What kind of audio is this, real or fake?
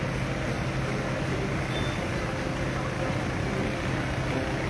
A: real